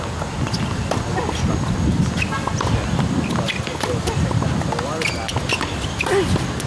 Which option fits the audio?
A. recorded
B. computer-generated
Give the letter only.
A